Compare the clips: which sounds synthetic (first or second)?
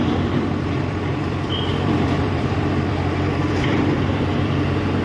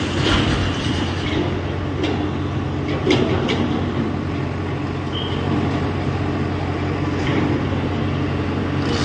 first